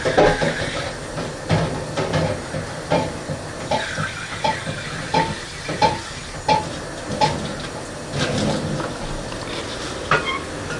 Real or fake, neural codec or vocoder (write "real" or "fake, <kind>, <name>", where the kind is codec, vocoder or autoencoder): real